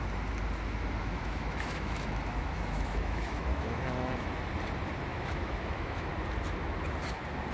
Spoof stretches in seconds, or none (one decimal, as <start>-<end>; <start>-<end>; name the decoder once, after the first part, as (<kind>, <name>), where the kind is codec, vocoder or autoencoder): 1.0-4.5 (autoencoder, DAC-VAE); 5.1-6.1